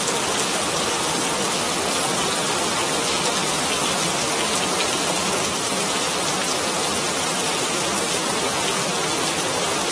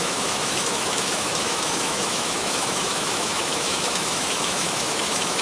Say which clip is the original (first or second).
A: first